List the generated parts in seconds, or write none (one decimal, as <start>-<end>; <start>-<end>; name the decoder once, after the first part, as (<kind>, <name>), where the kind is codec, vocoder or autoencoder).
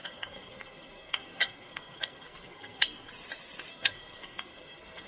0.0-3.1 (codec, SNAC); 3.7-5.1